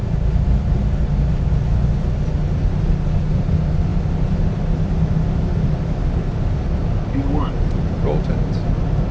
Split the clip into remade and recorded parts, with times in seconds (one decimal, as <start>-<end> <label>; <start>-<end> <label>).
0.0-9.1 recorded